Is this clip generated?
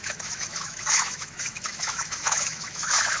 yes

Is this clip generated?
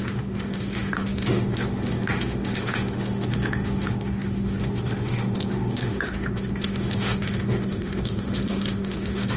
yes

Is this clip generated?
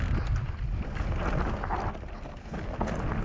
no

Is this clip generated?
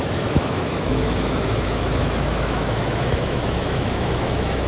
yes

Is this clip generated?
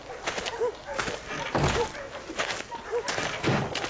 no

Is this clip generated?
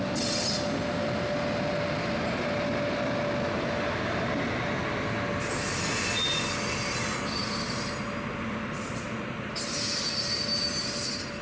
no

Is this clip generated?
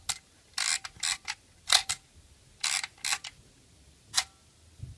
no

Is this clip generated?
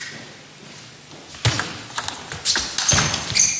no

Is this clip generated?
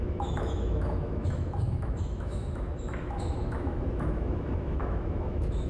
yes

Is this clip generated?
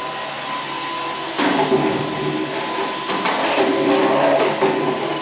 no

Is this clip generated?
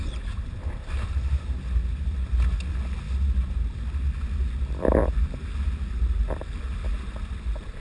no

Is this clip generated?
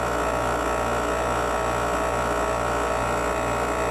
no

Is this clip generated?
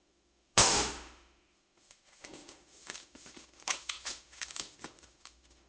yes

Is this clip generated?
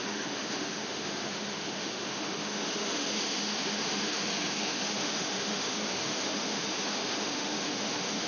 yes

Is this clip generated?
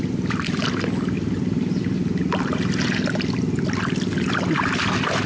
no